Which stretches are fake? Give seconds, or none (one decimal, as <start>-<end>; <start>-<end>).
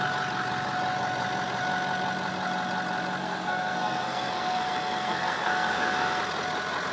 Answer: 3.2-6.2